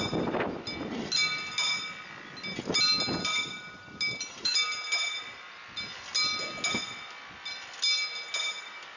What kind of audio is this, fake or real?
real